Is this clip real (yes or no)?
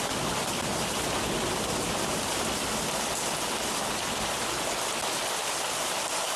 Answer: yes